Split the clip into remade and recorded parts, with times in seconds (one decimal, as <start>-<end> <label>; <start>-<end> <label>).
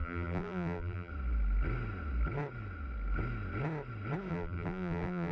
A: 0.0-1.1 remade; 1.1-4.3 recorded; 4.3-5.3 remade